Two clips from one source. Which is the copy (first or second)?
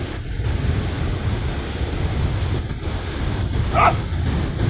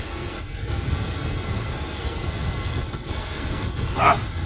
second